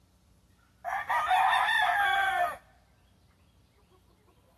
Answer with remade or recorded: recorded